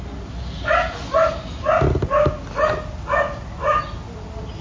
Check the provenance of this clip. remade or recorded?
recorded